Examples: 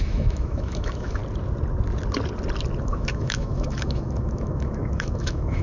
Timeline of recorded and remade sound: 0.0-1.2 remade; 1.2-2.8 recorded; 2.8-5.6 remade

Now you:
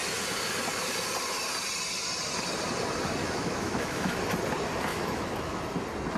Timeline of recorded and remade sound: 0.0-3.2 recorded; 3.2-4.1 remade; 4.1-4.9 recorded; 4.9-5.6 remade; 5.6-6.2 recorded